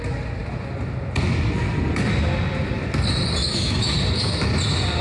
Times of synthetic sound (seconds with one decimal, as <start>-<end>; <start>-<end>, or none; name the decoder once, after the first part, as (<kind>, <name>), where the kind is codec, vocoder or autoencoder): 3.4-4.0 (autoencoder, DAC-VAE)